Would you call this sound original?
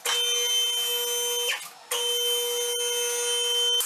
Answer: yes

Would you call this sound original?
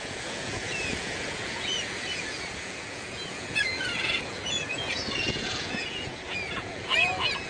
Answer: no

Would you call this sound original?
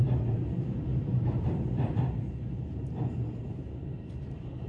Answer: no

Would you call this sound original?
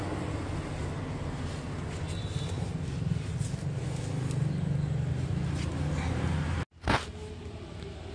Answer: yes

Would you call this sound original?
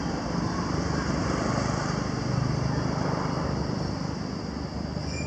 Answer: yes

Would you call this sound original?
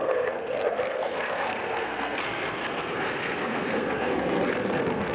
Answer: no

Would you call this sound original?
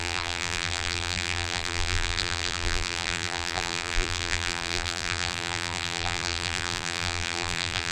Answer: no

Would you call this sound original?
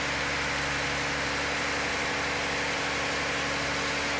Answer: yes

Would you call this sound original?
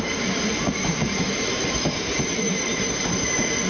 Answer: no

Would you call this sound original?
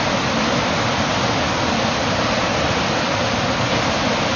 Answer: yes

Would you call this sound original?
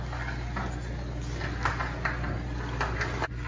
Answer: yes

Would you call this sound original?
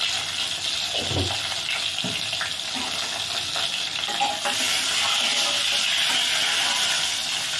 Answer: yes